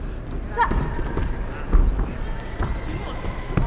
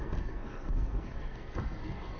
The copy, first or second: second